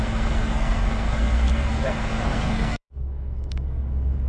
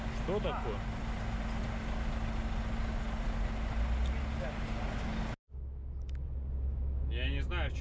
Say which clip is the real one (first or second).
second